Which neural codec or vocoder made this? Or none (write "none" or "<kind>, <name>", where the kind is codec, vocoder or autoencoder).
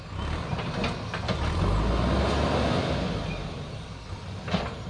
none